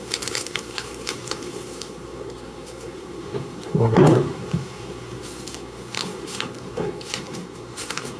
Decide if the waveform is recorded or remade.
remade